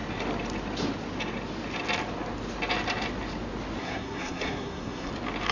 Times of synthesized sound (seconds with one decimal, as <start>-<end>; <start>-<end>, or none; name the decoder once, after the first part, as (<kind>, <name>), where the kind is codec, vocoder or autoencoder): 3.8-5.1 (codec, SNAC)